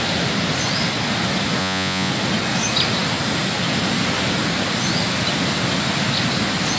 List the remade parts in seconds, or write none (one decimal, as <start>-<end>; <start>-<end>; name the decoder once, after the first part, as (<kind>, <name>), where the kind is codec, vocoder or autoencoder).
1.6-2.1 (vocoder, Vocos)